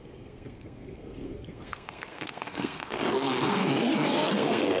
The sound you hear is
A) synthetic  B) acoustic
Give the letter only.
A